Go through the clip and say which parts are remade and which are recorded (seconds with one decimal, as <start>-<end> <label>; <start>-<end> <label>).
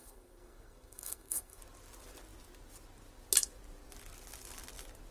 0.0-1.6 remade; 1.6-5.1 recorded